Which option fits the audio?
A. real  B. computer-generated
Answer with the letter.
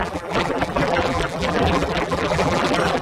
B